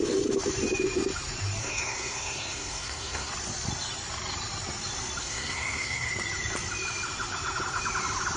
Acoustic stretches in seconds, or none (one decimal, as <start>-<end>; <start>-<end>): 0.0-1.6; 3.3-5.2; 6.1-8.4